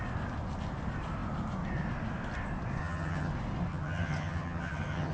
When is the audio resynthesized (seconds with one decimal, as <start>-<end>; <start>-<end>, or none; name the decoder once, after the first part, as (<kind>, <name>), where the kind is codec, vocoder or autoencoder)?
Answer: 2.8-3.3 (vocoder, HiFi-GAN); 3.7-5.1